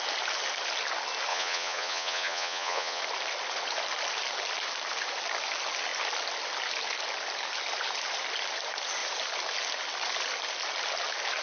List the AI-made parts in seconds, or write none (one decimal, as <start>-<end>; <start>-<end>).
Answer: 1.3-3.0